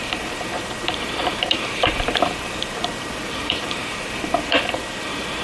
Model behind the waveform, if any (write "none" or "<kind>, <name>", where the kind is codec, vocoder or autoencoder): vocoder, BigVGAN v2